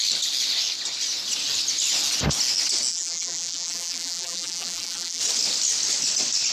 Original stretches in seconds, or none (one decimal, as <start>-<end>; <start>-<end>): 0.0-2.9; 5.2-6.5